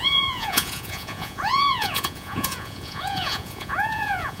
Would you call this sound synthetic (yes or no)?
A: yes